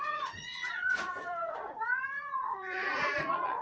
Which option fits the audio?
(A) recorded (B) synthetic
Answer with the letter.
B